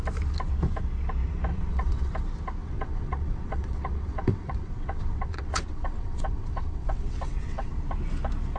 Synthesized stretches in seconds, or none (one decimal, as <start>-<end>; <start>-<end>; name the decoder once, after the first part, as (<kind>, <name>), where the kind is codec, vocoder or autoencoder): 1.5-2.1 (vocoder, WaveNeXt); 2.6-7.7

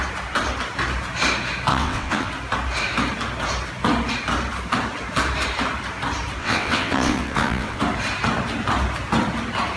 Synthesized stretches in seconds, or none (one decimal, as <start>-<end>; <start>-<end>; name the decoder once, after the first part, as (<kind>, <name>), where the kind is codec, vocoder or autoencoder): 1.7-2.3 (vocoder, WaveNeXt); 6.4-7.8

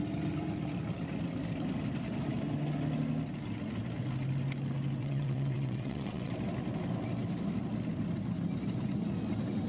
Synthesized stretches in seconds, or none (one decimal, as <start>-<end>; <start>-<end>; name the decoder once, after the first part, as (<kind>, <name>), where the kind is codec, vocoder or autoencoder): 5.0-6.3 (vocoder, WaveNeXt)

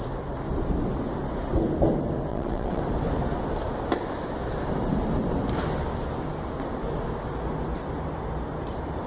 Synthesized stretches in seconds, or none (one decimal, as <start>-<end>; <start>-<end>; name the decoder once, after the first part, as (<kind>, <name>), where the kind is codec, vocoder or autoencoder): 2.3-2.8 (vocoder, WaveNeXt)

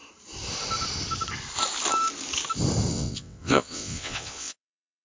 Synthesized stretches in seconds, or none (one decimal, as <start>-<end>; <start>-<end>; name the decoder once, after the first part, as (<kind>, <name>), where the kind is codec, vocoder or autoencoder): 2.9-5.0 (vocoder, WaveNeXt)

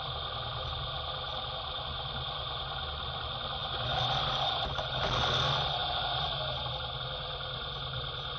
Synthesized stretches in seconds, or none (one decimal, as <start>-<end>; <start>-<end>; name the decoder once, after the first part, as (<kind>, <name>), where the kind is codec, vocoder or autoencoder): none